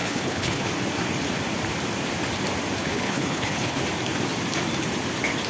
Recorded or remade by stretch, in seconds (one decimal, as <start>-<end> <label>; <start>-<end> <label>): 0.0-0.7 remade; 0.7-2.8 recorded; 2.8-3.8 remade; 3.8-5.5 recorded